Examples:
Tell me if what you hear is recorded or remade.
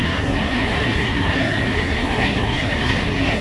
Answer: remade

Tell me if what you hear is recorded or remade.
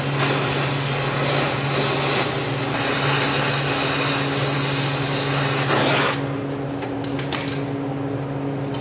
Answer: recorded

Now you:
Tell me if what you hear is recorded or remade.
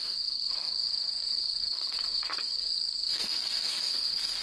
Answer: remade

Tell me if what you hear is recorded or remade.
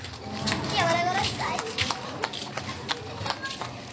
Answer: recorded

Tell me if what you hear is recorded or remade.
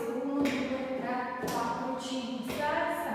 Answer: recorded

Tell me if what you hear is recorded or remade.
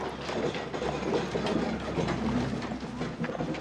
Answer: recorded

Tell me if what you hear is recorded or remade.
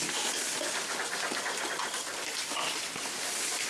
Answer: recorded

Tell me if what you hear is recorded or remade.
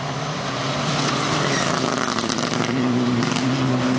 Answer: recorded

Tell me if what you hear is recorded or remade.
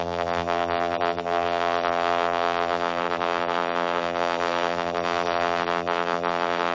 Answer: remade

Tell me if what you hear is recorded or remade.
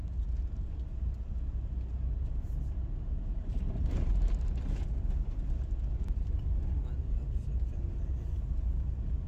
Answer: recorded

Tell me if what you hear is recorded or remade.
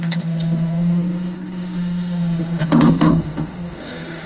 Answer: remade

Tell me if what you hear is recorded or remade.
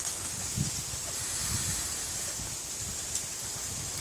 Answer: recorded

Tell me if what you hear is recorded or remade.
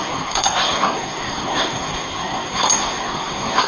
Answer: remade